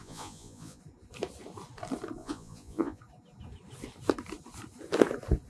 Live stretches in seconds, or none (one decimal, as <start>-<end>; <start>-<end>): 0.8-2.2; 3.0-5.5